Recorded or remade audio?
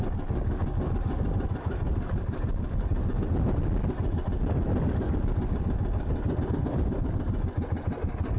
recorded